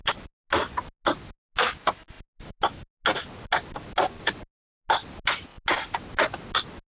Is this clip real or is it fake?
real